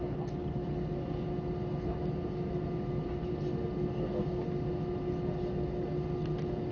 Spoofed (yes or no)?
no